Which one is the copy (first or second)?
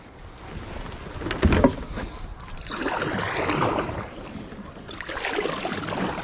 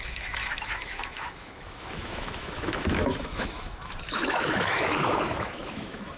second